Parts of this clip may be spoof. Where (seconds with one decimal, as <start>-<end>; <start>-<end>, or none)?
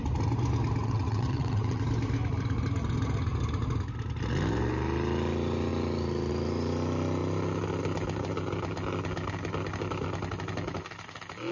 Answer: 0.8-1.8